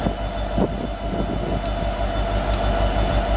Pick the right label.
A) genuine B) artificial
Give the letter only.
A